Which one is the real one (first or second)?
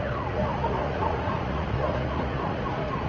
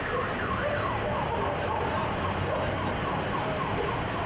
second